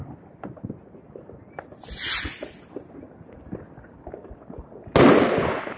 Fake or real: real